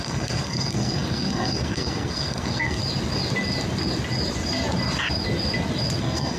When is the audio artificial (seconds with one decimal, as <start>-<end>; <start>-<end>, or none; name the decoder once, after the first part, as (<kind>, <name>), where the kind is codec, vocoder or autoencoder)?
0.0-2.8 (codec, SNAC); 6.0-6.4